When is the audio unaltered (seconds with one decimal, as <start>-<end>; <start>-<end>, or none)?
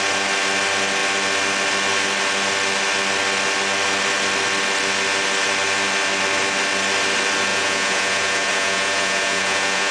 0.0-7.5